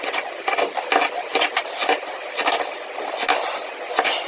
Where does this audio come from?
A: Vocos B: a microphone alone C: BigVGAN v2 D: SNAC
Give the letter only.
B